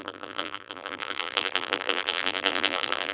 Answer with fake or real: fake